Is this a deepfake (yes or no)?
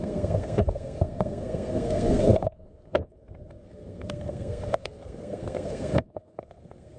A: yes